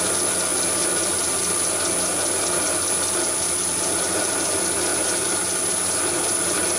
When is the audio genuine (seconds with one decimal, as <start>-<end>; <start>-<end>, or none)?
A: 0.5-3.4; 4.9-6.1

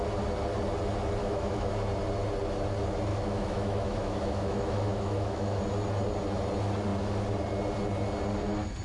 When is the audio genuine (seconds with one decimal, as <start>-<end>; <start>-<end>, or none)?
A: 0.0-1.2; 1.7-3.1; 5.6-8.8

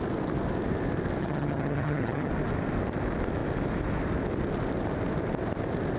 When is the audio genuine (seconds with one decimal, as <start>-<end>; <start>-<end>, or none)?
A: 0.0-1.2; 2.3-6.0